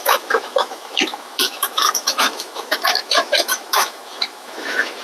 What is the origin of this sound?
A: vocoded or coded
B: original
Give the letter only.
A